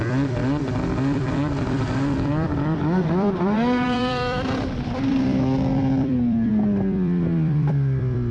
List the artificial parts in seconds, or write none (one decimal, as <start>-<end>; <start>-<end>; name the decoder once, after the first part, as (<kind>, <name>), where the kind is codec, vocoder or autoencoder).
0.0-8.3 (vocoder, BigVGAN v2)